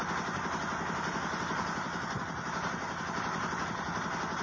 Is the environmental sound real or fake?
real